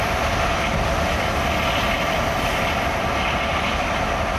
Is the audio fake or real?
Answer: real